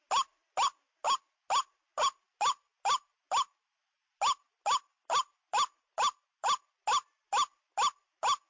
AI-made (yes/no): no